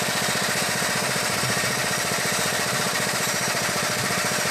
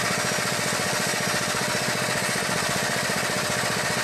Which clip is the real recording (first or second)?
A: second